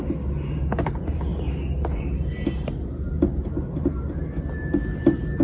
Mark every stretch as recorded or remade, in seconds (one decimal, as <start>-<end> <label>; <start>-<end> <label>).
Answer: 0.0-5.4 recorded